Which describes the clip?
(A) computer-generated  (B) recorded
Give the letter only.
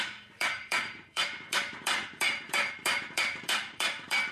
A